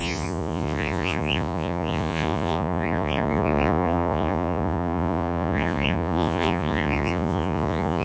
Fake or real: fake